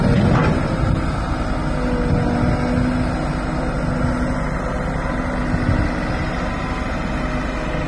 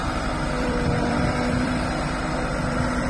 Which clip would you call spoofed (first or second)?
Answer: second